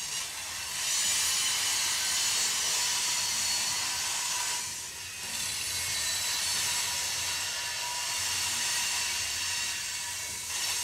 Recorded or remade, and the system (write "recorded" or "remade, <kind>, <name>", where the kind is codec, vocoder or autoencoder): recorded